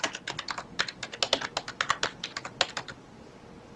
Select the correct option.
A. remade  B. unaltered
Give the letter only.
B